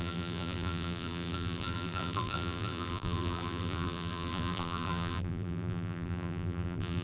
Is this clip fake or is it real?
fake